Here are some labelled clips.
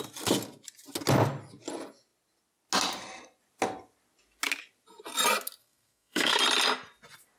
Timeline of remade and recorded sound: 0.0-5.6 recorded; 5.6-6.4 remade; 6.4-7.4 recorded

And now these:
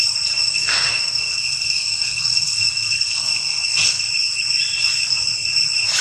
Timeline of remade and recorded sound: 0.0-0.4 recorded; 0.4-4.0 remade; 4.0-6.0 recorded

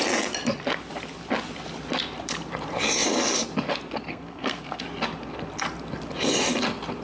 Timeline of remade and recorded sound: 0.0-4.1 recorded; 4.1-4.8 remade; 4.8-7.0 recorded

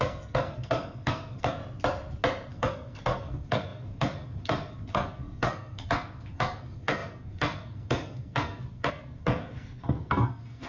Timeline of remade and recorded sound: 0.0-1.6 remade; 1.6-2.5 recorded; 2.5-10.7 remade